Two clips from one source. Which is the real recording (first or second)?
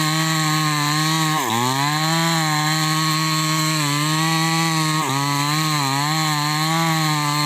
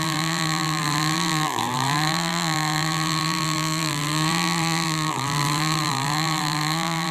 first